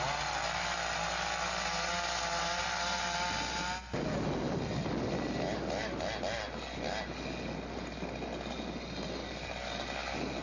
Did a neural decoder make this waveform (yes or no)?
no